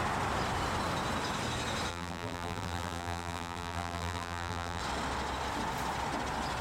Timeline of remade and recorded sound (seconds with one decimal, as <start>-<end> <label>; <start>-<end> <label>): 0.0-1.9 recorded; 1.9-4.8 remade; 4.8-6.6 recorded